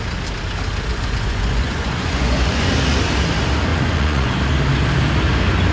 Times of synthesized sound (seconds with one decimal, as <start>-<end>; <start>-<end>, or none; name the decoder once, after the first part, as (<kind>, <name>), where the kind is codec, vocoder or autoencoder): 0.9-2.7 (vocoder, Vocos); 3.7-4.3